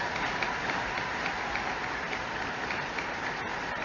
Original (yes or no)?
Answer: yes